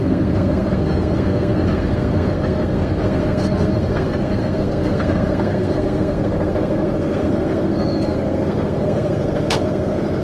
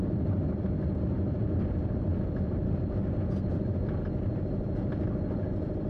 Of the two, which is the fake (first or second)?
first